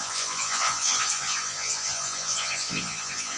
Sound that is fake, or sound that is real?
fake